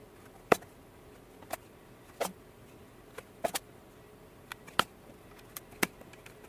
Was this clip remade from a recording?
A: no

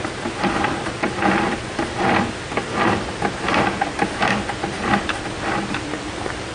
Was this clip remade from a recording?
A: no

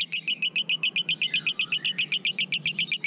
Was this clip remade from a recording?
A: no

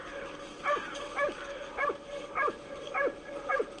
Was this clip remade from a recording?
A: yes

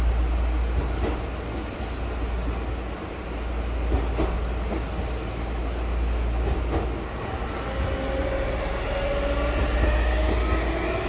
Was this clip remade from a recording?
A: no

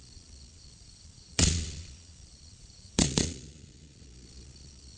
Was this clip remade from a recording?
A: yes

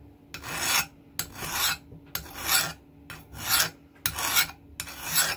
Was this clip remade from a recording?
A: no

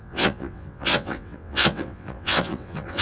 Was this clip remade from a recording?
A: yes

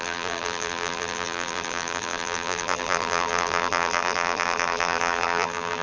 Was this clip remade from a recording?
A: yes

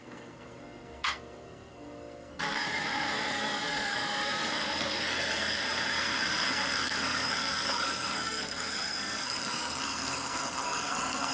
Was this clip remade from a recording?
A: yes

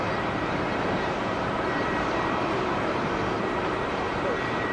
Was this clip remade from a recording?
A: yes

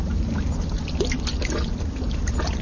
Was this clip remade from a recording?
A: no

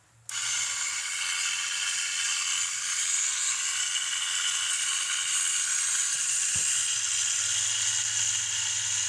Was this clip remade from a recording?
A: no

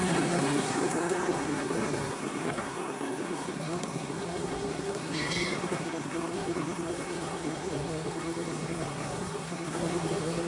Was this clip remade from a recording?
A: yes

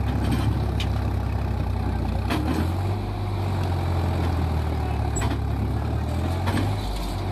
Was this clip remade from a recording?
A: no